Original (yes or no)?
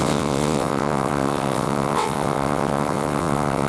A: no